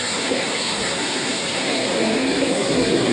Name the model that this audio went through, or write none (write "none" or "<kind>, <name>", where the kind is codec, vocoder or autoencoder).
codec, SNAC